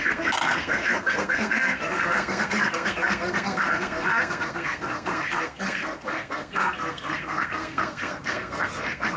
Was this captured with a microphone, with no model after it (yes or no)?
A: no